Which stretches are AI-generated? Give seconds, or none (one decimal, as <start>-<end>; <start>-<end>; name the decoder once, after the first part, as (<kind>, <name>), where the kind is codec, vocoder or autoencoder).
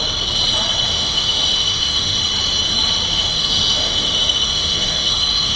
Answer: 0.9-2.2 (autoencoder, DAC-VAE); 3.1-5.6